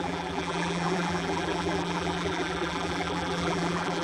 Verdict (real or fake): fake